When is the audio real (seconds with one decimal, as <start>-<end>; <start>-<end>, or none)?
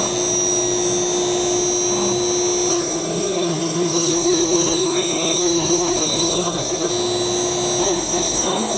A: 0.0-2.7; 6.9-7.8